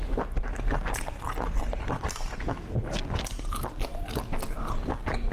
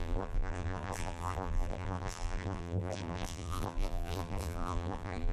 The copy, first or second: second